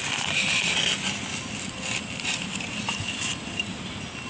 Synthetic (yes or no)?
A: no